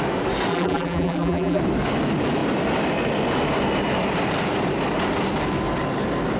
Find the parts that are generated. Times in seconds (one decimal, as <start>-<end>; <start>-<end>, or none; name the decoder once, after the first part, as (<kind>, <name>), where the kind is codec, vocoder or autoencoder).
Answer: 0.5-1.6 (vocoder, BigVGAN v2)